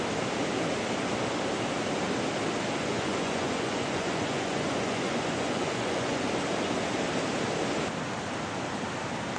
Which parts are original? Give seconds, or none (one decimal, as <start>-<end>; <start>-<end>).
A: 0.0-2.8; 6.3-9.4